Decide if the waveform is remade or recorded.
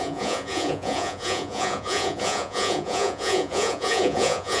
remade